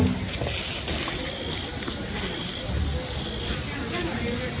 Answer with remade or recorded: recorded